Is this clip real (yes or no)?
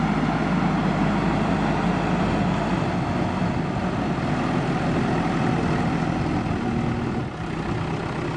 yes